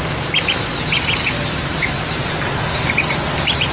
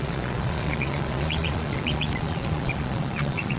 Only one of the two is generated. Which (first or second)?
second